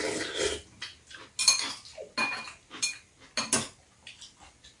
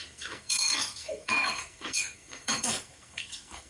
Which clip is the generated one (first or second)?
second